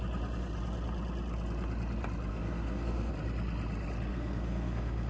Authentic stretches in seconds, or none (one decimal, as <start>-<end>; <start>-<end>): 0.0-2.3; 3.1-4.1